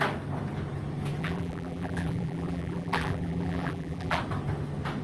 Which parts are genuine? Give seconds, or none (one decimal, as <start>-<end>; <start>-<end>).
0.0-1.2; 4.2-5.0